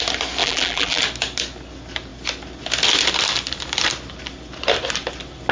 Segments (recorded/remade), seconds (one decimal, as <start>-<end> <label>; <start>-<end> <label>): 0.0-0.4 recorded; 0.4-1.0 remade; 1.0-5.5 recorded